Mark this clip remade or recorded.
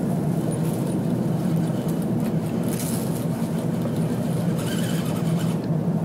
recorded